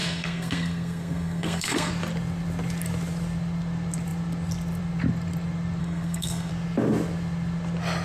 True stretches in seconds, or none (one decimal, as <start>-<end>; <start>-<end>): 1.9-5.8; 6.5-8.0